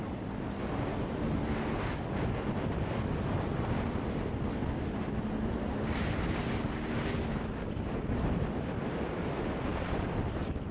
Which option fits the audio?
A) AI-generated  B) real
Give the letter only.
B